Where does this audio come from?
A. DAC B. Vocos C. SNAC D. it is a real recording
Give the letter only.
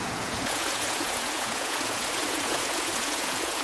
B